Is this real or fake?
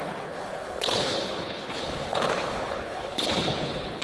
fake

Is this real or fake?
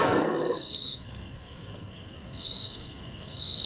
fake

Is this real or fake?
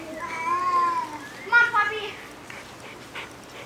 real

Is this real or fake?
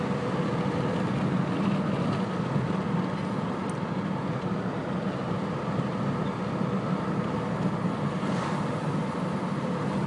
real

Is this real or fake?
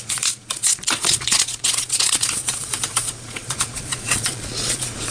fake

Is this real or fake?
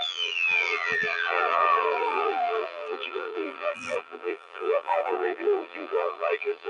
fake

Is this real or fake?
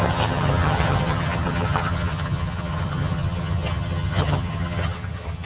fake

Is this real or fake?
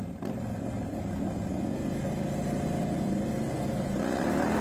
real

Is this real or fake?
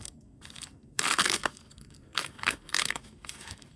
fake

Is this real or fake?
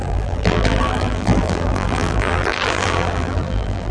fake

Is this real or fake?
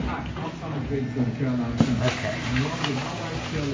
real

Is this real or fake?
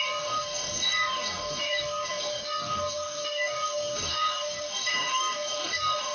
fake